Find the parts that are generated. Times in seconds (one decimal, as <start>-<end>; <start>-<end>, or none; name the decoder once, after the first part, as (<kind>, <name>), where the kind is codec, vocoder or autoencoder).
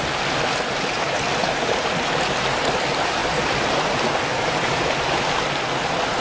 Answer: none